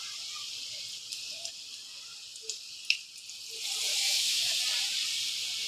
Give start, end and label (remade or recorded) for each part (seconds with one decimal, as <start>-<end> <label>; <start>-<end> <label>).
0.0-3.9 recorded; 3.9-4.6 remade; 4.6-5.7 recorded